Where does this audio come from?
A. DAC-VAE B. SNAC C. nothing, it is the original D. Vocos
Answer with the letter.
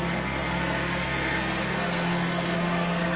B